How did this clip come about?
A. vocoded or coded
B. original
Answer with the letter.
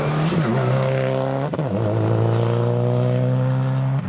B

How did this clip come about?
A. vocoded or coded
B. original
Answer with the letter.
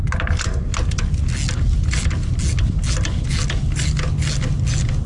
B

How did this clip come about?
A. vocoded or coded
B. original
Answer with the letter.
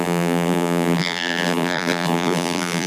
A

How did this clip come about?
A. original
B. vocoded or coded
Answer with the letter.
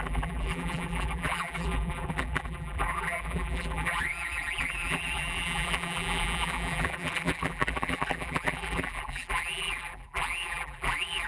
B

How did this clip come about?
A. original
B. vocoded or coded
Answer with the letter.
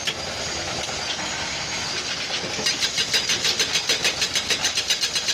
A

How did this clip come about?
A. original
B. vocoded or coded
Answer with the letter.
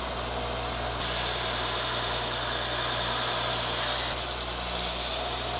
A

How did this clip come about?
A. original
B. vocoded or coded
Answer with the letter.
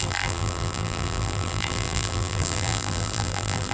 B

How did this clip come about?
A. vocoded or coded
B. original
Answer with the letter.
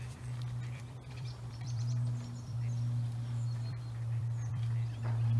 A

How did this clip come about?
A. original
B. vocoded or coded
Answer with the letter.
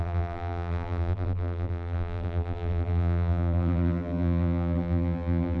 B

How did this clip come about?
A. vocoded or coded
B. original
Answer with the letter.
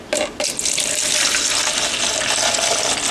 B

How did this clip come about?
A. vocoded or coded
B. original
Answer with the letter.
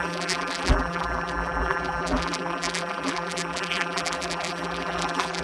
A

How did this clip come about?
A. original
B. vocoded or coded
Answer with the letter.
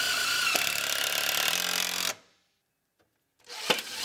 A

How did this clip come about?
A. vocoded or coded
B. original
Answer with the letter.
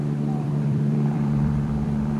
A